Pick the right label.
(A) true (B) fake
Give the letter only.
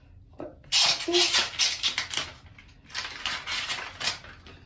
A